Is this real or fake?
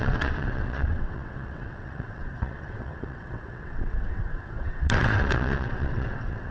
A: fake